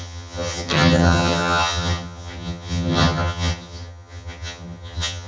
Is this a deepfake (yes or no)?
yes